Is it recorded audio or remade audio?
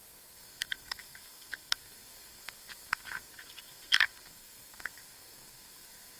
remade